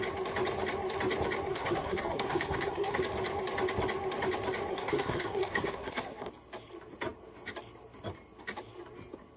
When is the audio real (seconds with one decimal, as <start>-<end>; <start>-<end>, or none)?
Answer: 0.0-1.5; 3.0-4.7; 6.3-9.4

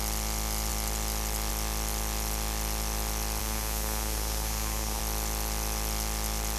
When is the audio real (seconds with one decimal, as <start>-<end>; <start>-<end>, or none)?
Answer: 0.0-3.4; 5.0-6.6

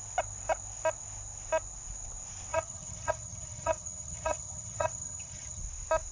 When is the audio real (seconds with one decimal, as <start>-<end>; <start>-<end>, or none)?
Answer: 0.0-2.5; 5.6-6.1

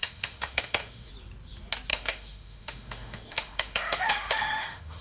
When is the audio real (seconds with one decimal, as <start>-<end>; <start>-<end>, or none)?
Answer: 1.1-1.9

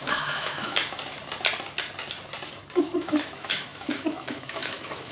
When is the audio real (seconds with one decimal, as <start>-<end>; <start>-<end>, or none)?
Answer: 0.8-2.8